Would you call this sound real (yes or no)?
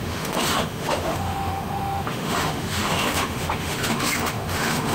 no